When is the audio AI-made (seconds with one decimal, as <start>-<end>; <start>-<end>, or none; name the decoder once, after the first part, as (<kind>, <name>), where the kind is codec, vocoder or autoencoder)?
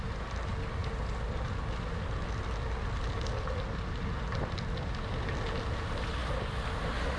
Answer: none